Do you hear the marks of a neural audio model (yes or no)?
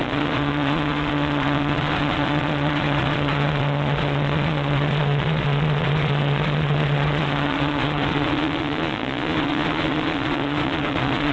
yes